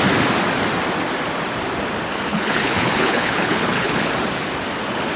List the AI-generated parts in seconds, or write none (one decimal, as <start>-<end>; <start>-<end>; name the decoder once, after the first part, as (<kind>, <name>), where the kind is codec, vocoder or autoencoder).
2.3-4.1 (codec, HILCodec)